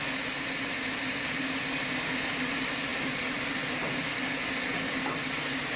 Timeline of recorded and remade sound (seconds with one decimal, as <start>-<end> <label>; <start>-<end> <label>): 0.0-5.8 recorded